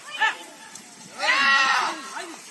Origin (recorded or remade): recorded